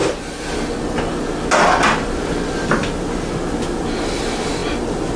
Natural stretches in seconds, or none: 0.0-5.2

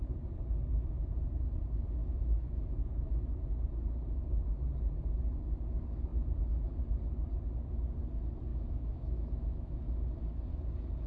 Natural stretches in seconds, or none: 0.0-2.0; 2.8-8.5; 9.9-11.1

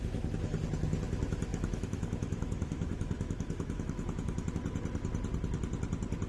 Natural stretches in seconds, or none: 0.0-1.5; 4.5-6.3

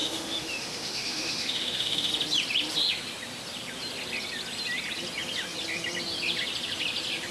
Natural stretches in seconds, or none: 2.1-7.3

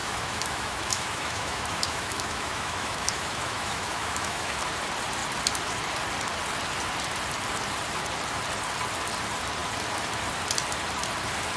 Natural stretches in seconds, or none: 4.6-11.6

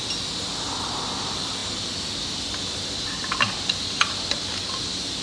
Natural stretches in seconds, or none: 0.0-5.2

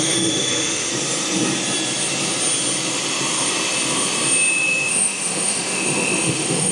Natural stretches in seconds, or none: 0.9-4.9

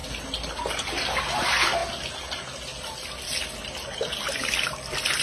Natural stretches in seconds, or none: 0.0-5.2